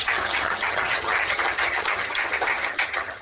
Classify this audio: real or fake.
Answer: fake